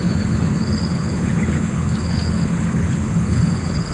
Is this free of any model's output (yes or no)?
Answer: no